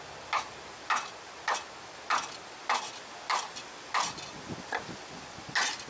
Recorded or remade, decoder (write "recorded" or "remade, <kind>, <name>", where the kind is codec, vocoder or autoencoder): recorded